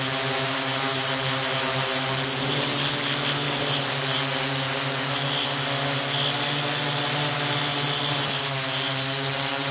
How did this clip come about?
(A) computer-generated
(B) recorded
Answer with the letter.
B